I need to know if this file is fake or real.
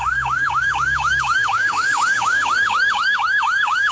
fake